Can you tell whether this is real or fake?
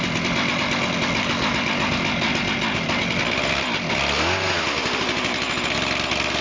real